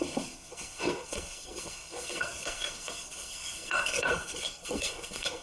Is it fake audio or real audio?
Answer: fake